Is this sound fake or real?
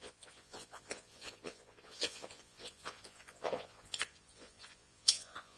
fake